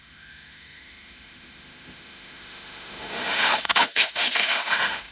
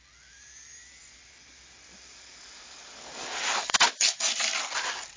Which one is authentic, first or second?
second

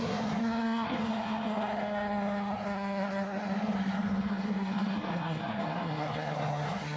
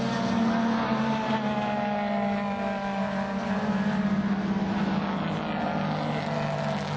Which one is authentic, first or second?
second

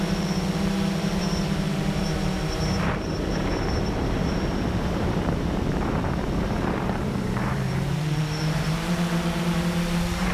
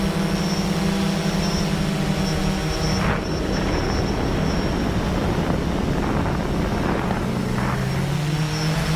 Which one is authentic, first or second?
second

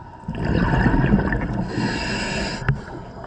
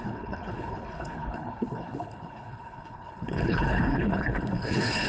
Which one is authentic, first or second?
first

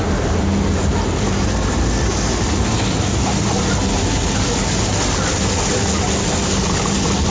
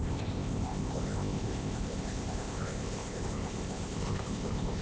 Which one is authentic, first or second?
first